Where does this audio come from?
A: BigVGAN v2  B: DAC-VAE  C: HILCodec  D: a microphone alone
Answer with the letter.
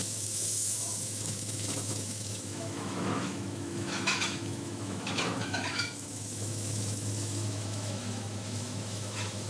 B